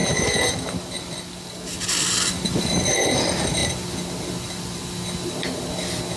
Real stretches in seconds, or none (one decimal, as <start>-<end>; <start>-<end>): 0.0-6.2